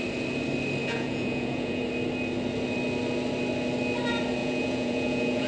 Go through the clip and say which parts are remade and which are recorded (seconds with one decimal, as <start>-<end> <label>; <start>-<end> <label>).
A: 0.0-0.8 recorded; 0.8-1.8 remade; 1.8-4.4 recorded; 4.4-5.5 remade